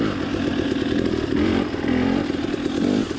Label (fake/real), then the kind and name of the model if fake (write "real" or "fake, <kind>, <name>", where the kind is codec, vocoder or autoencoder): fake, vocoder, BigVGAN v2